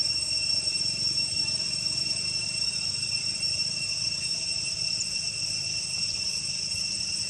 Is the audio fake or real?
fake